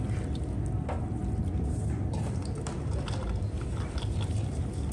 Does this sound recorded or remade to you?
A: remade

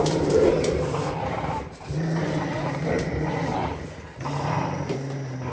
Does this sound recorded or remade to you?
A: remade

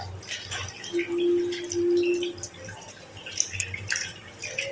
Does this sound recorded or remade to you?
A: recorded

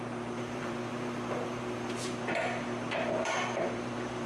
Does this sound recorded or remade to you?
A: remade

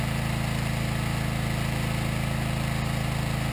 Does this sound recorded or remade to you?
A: recorded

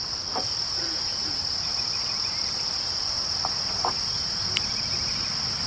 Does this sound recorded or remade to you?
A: recorded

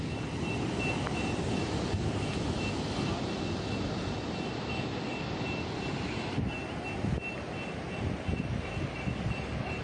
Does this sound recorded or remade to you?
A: recorded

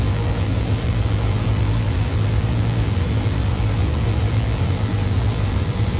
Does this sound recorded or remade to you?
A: remade